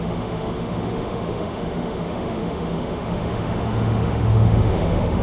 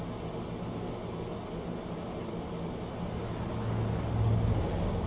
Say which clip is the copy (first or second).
first